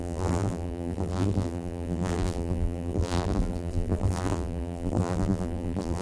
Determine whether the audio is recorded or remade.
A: remade